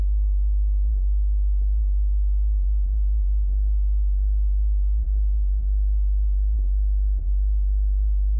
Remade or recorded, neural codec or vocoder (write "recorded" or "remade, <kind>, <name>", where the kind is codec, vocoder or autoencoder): remade, vocoder, BigVGAN v2